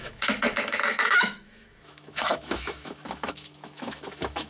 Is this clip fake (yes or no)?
yes